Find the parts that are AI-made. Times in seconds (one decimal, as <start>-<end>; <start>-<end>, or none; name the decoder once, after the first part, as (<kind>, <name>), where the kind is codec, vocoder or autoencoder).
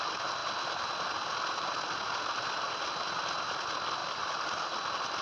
4.0-5.2 (vocoder, BigVGAN v2)